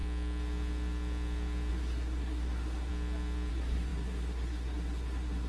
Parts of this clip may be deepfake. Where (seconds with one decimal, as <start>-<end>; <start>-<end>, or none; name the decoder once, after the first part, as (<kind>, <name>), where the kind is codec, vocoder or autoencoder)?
1.7-2.9 (codec, SNAC); 3.5-5.5